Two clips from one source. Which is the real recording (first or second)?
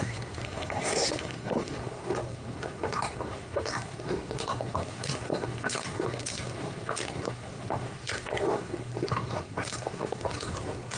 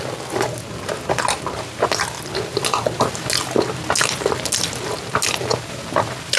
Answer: second